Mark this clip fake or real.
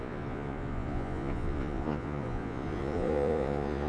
fake